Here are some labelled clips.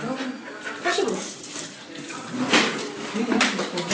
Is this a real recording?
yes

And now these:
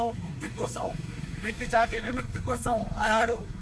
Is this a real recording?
no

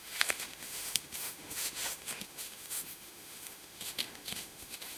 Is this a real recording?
no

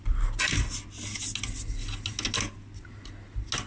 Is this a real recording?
yes